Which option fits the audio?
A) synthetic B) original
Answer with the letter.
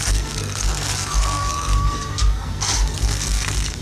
A